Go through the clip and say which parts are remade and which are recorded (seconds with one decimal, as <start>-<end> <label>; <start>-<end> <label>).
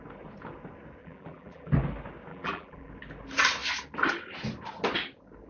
0.0-1.0 recorded; 1.0-1.7 remade; 1.7-2.3 recorded; 2.3-2.9 remade; 2.9-5.5 recorded